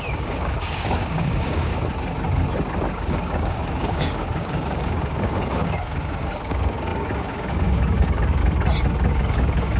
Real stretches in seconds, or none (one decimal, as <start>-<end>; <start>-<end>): 1.7-2.9; 8.4-9.1